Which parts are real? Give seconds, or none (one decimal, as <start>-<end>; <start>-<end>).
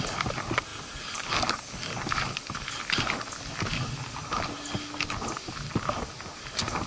0.0-6.9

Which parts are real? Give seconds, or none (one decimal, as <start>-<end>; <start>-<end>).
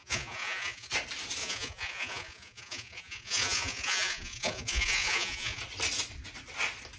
0.9-1.4; 5.6-7.0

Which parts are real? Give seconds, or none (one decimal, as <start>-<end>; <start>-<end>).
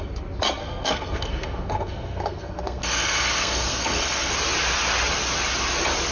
0.0-0.6; 4.3-6.1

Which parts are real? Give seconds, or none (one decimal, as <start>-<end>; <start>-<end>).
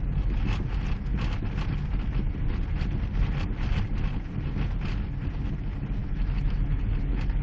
0.0-6.0; 6.8-7.4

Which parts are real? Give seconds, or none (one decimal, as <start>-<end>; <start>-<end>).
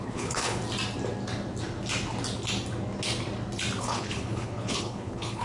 0.6-3.8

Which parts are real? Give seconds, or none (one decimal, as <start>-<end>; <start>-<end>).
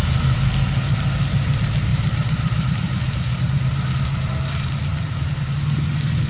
0.0-1.9; 4.5-4.9; 5.5-6.3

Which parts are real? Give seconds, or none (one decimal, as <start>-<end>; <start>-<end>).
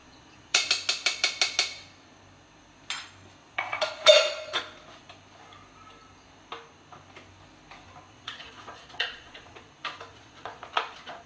0.7-3.4; 4.6-8.1; 9.7-10.1